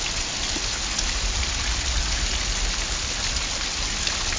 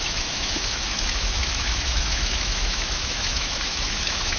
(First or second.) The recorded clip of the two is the first